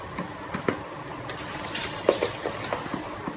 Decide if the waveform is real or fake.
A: real